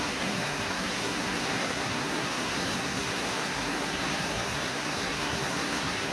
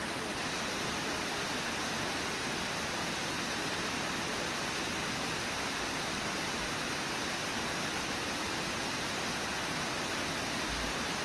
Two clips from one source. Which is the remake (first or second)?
first